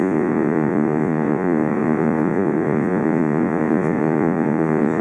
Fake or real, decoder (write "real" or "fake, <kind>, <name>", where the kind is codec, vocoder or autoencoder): fake, vocoder, Vocos